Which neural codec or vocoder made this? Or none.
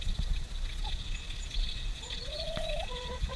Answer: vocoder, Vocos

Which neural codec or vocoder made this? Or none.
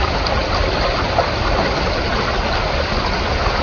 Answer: none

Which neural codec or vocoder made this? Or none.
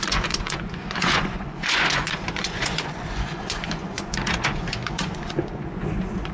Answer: vocoder, Vocos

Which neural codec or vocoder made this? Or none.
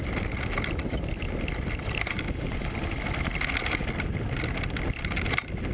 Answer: none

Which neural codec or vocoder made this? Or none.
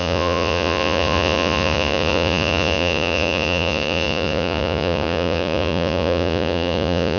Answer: vocoder, Vocos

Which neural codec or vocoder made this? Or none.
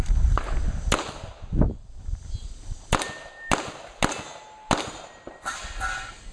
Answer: none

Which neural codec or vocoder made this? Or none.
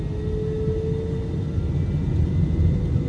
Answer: none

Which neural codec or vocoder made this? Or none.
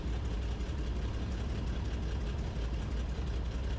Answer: none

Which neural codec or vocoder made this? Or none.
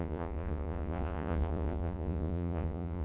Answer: vocoder, Vocos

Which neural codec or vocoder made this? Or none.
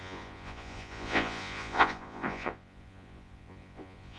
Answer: vocoder, Vocos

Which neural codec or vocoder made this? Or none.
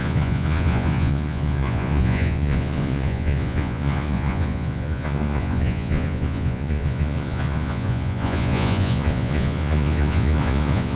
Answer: vocoder, Vocos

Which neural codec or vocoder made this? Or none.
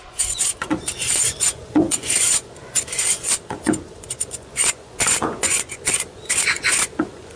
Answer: vocoder, Vocos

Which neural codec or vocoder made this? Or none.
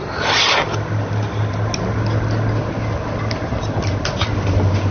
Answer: none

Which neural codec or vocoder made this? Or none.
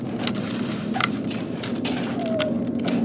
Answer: none